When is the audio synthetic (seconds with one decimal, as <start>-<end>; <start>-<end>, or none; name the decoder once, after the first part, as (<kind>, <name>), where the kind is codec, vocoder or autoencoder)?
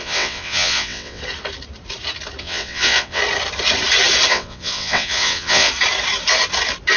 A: 0.0-1.2 (vocoder, WaveNeXt); 2.4-3.2; 4.3-5.7